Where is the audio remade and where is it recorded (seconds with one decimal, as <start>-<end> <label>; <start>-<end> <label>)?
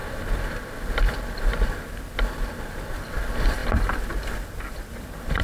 0.0-3.1 recorded; 3.1-5.4 remade